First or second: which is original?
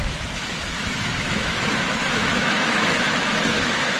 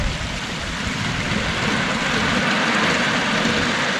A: second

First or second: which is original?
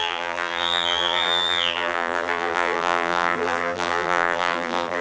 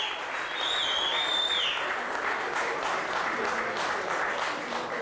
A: second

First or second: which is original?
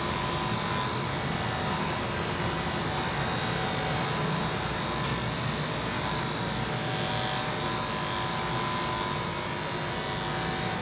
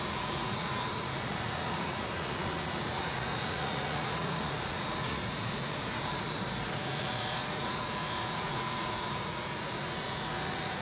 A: first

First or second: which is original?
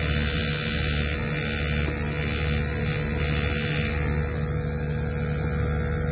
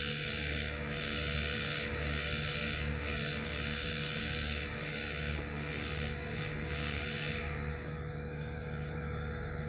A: first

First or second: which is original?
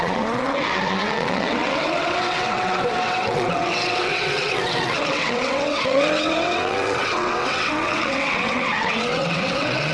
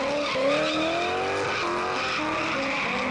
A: second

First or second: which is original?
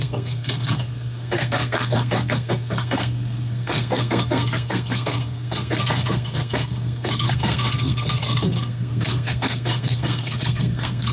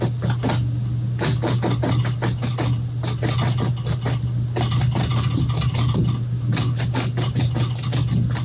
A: second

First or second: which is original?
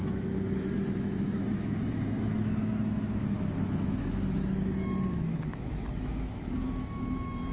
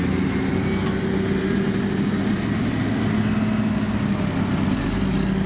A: second